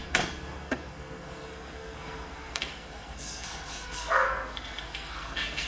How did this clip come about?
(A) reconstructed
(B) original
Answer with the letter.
A